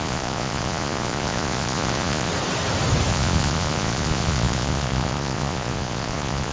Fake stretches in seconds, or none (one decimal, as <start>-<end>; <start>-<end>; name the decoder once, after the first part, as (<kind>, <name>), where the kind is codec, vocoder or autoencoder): 0.0-2.3 (vocoder, Vocos); 3.1-6.5